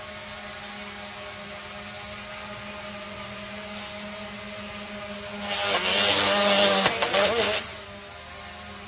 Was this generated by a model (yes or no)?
no